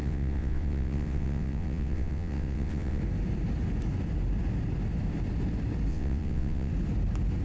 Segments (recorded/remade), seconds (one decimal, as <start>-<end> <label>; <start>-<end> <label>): 0.0-3.0 remade; 3.0-5.9 recorded; 5.9-6.7 remade; 6.7-7.4 recorded